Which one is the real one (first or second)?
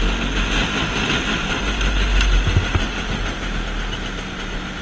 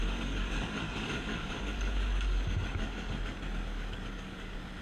first